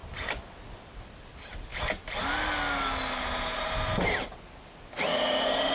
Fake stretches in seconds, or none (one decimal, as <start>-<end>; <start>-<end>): none